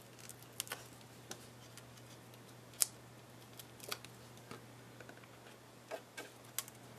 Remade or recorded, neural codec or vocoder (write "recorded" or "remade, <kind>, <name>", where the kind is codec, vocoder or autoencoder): recorded